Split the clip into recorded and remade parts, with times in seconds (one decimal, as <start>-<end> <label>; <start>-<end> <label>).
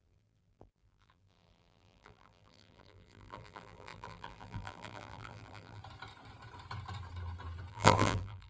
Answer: 0.0-5.8 remade; 5.8-7.7 recorded; 7.7-8.5 remade